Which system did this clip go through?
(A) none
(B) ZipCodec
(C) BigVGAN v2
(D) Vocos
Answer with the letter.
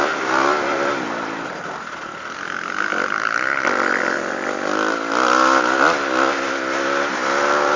A